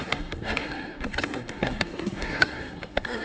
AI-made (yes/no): yes